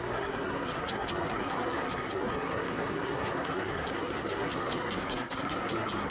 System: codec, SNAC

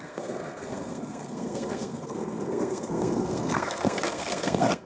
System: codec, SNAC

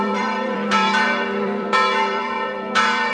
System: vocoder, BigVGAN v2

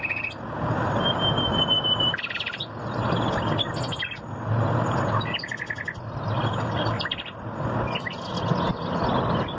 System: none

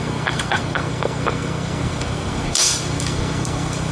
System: codec, SNAC